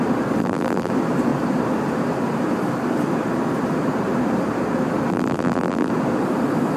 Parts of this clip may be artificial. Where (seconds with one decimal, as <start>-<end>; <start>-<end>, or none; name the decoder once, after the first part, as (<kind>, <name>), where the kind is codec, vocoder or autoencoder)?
0.4-0.9 (vocoder, BigVGAN v2); 5.1-5.9